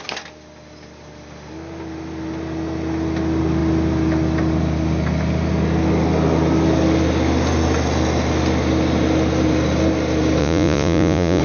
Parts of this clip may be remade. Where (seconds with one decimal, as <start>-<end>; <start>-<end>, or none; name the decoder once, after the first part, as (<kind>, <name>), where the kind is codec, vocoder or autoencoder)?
10.4-11.4 (vocoder, Vocos)